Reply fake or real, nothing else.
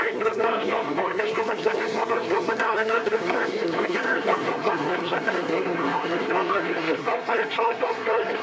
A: fake